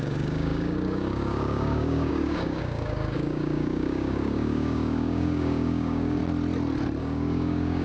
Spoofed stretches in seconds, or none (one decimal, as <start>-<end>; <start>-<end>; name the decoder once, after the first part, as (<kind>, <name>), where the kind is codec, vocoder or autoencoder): 0.0-6.2 (codec, DAC); 7.0-7.8